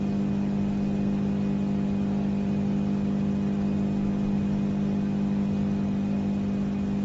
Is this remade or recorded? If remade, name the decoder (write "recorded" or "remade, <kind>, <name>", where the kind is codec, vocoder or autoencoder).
recorded